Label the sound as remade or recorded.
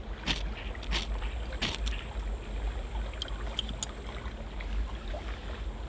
recorded